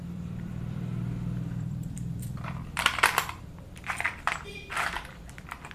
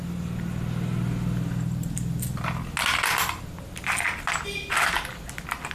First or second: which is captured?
second